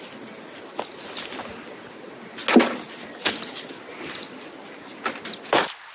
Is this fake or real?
real